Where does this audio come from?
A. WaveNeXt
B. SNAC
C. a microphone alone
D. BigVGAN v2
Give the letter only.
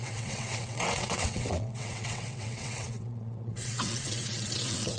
A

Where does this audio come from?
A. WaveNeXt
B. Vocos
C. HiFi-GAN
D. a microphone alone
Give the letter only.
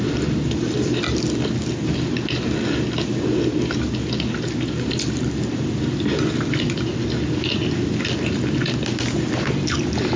D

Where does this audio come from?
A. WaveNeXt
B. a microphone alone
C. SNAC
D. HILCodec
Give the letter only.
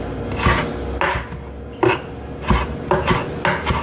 B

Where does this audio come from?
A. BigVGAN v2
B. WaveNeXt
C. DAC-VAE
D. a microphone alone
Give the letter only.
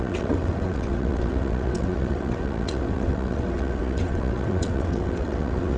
B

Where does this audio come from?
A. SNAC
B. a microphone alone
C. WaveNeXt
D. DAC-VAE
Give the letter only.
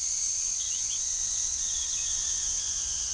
C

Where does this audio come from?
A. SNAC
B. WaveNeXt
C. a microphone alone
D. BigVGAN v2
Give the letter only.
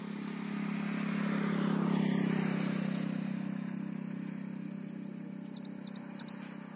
C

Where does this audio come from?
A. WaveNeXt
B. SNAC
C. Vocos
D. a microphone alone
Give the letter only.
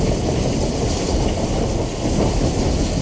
D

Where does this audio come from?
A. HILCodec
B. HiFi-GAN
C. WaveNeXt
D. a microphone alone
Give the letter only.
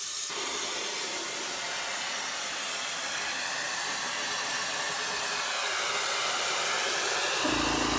D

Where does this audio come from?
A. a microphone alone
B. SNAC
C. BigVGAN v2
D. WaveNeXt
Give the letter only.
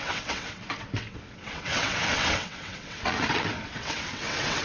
D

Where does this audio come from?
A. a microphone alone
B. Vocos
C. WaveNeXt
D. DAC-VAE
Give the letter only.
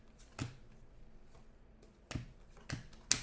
A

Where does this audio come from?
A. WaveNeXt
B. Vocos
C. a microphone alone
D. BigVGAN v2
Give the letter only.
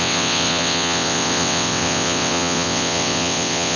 A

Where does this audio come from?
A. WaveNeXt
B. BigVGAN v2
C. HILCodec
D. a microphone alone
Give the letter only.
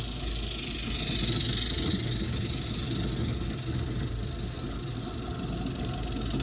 D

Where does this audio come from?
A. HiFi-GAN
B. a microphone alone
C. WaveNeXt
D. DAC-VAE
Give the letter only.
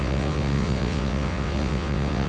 C